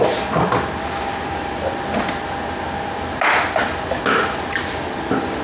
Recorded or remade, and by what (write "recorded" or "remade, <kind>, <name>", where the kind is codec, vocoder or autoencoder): recorded